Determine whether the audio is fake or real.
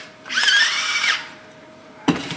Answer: fake